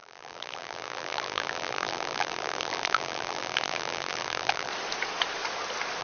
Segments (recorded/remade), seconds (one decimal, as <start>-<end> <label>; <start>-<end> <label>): 0.0-4.7 remade; 4.7-6.0 recorded